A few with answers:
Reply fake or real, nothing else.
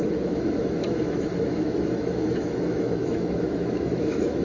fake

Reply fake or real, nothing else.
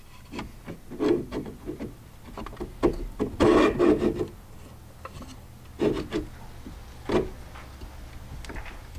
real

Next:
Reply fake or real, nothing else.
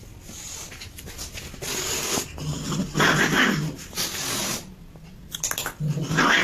real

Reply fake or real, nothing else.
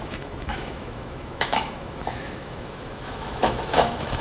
fake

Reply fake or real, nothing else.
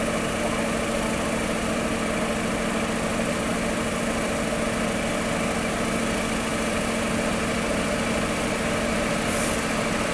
real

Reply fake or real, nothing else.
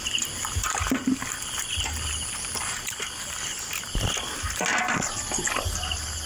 real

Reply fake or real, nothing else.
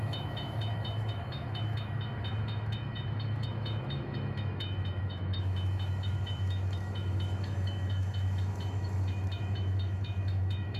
fake